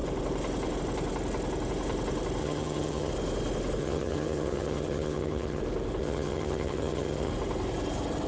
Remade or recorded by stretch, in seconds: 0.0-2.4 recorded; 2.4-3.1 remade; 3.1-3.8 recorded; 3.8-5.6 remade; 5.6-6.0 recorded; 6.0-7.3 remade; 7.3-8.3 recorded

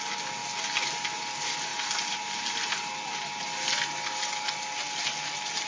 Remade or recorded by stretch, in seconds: 0.0-5.7 recorded

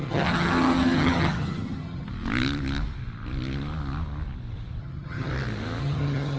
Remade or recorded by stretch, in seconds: 0.0-2.1 remade; 2.1-4.8 recorded; 4.8-5.3 remade; 5.3-5.8 recorded; 5.8-6.4 remade